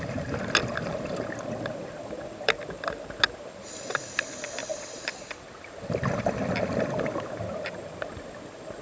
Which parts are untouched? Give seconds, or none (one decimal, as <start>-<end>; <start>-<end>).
0.0-8.8